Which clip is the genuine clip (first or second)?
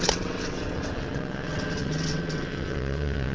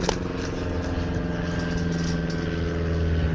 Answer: second